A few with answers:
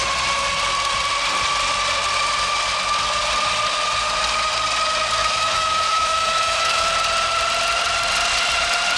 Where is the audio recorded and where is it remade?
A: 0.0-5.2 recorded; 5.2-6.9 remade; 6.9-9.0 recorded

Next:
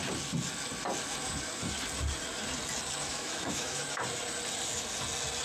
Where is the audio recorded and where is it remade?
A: 0.0-3.0 recorded; 3.0-3.8 remade; 3.8-5.4 recorded

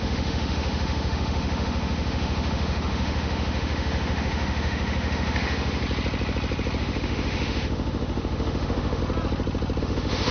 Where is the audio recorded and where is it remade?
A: 0.0-5.8 remade; 5.8-6.8 recorded; 6.8-9.0 remade; 9.0-9.8 recorded; 9.8-10.3 remade

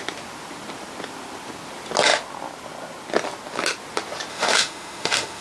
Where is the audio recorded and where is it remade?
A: 0.0-4.3 recorded; 4.3-5.4 remade

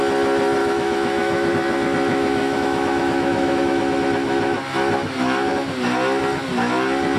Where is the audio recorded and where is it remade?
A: 0.0-0.6 recorded; 0.6-1.5 remade; 1.5-2.1 recorded; 2.1-3.8 remade; 3.8-7.2 recorded

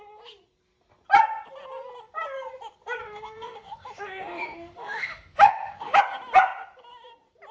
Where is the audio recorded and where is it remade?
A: 0.0-3.0 recorded; 3.0-6.0 remade; 6.0-7.5 recorded